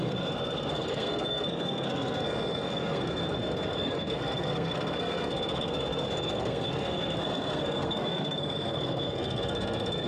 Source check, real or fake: fake